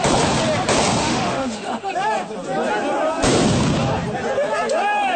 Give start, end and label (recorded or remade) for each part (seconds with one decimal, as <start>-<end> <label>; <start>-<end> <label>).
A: 0.0-1.0 recorded; 1.0-1.9 remade; 1.9-5.2 recorded